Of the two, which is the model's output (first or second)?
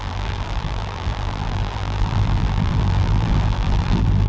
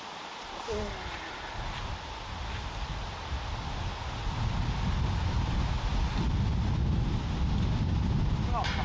first